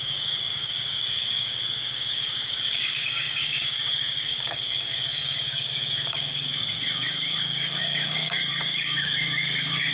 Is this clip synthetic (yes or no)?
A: yes